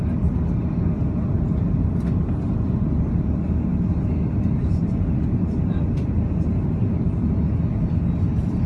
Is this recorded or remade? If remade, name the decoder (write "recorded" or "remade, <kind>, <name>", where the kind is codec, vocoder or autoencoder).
recorded